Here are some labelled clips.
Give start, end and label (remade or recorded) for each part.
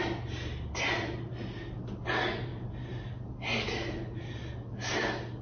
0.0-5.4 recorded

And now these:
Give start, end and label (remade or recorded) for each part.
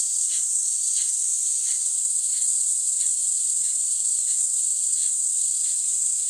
0.0-6.3 recorded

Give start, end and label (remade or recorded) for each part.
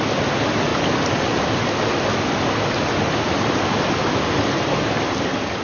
0.0-5.6 recorded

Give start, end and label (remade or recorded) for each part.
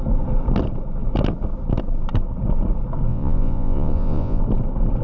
0.0-3.1 recorded; 3.1-4.4 remade; 4.4-5.0 recorded